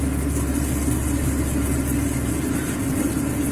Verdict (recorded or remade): recorded